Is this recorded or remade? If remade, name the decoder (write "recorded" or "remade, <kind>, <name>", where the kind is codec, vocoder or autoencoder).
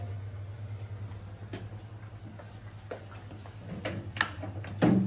recorded